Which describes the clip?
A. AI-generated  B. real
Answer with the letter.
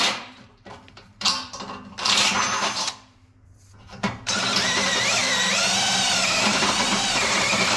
A